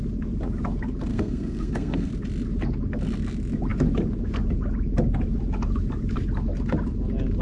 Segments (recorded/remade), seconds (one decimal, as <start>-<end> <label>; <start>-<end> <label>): 0.0-1.1 recorded; 1.1-2.1 remade; 2.1-7.4 recorded